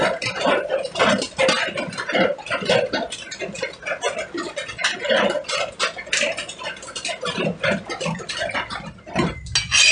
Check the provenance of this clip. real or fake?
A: real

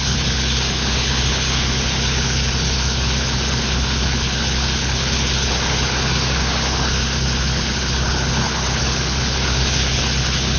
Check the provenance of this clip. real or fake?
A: fake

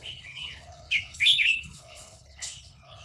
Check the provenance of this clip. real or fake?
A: fake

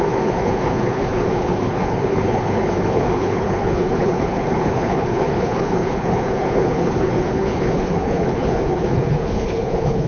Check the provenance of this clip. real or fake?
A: fake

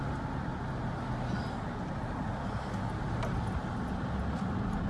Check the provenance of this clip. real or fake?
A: real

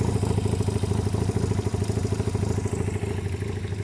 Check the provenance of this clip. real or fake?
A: real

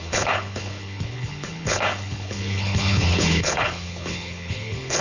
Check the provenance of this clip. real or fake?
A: fake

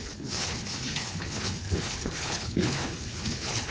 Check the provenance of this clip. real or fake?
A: fake